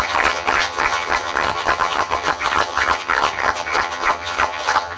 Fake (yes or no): yes